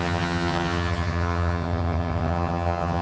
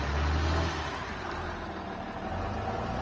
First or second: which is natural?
second